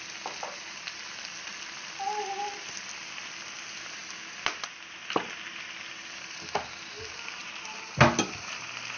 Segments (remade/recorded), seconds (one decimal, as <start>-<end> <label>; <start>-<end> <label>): 0.0-1.5 recorded; 1.5-4.0 remade; 4.0-7.4 recorded; 7.4-9.0 remade